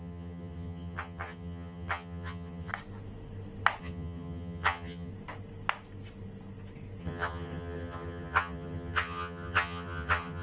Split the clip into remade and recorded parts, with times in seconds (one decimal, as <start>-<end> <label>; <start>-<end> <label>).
0.0-2.7 remade; 2.7-3.8 recorded; 3.8-5.1 remade; 5.1-7.0 recorded; 7.0-10.4 remade